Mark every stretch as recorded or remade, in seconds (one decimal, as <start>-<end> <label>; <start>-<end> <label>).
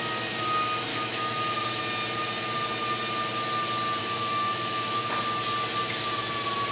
0.0-0.9 recorded; 0.9-1.8 remade; 1.8-4.0 recorded; 4.0-5.1 remade; 5.1-6.7 recorded